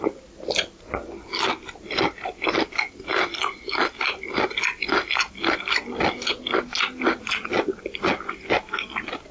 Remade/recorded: recorded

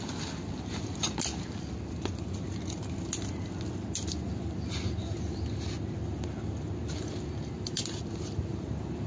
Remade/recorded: recorded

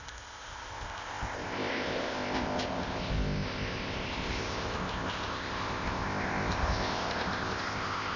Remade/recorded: remade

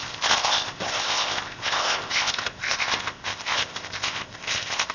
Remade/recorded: remade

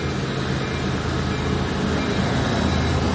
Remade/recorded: recorded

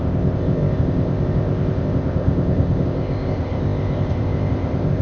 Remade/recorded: remade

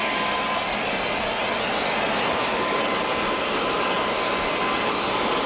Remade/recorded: recorded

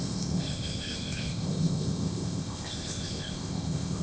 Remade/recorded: remade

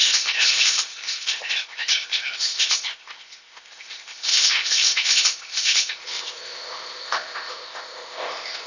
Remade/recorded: remade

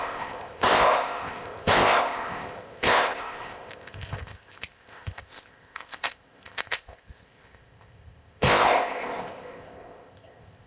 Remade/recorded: remade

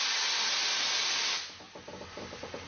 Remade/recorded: recorded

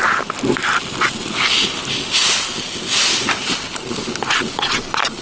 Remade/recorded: recorded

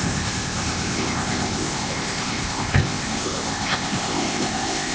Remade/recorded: remade